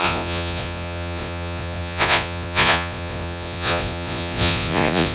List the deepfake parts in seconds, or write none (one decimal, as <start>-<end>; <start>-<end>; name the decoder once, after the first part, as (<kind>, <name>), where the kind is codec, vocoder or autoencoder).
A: 0.0-5.1 (vocoder, Vocos)